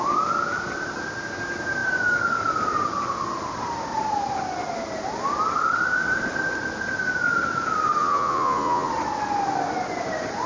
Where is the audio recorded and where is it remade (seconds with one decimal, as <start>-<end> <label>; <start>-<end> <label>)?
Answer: 0.0-8.0 recorded; 8.0-8.9 remade; 8.9-10.5 recorded